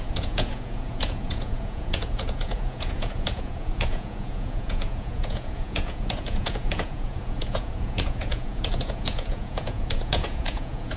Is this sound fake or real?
fake